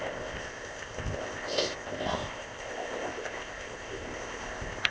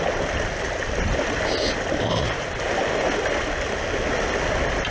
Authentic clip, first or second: second